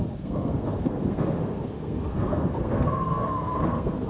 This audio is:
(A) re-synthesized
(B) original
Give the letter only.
A